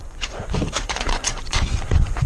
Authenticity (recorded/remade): remade